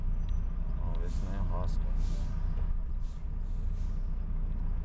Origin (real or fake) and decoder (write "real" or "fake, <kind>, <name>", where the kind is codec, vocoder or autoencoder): real